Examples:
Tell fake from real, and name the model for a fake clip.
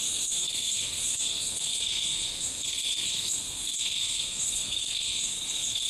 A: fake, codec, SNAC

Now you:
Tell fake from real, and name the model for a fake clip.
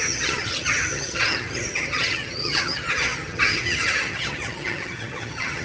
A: fake, vocoder, HiFi-GAN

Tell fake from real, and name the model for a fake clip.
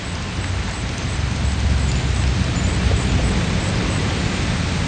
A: real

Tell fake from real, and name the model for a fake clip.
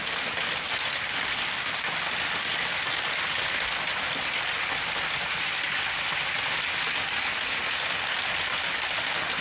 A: real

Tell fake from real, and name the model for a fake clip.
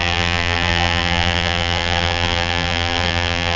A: fake, vocoder, BigVGAN v2